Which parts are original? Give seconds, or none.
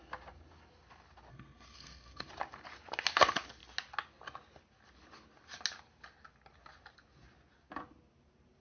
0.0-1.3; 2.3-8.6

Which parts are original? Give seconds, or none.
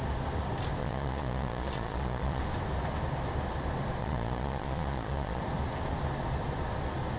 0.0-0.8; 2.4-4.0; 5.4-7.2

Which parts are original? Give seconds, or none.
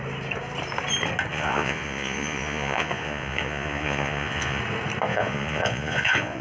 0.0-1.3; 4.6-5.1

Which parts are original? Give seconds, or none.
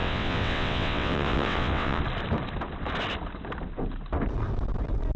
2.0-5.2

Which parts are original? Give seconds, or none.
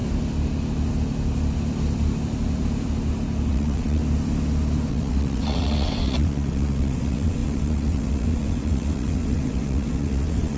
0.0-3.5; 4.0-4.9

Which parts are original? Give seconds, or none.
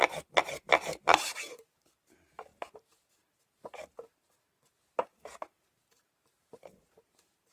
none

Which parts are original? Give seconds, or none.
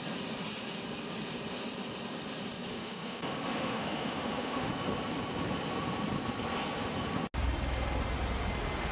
0.0-2.7; 4.7-8.9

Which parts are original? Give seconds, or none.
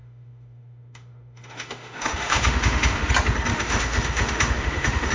3.1-3.5